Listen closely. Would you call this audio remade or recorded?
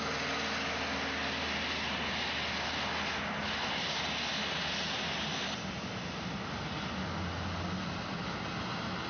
recorded